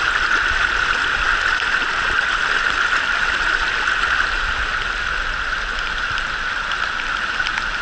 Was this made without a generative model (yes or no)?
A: yes